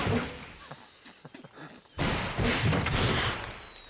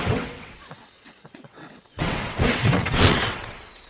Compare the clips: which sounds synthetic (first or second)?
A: second